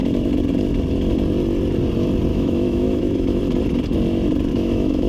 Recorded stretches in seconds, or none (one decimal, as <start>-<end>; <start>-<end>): 0.0-2.3; 3.4-4.5